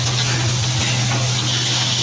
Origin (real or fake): real